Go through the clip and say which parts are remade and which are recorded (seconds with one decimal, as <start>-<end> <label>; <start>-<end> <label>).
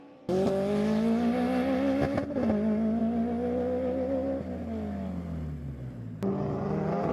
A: 0.0-7.1 recorded